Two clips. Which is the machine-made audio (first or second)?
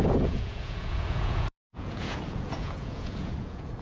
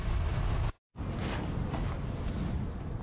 first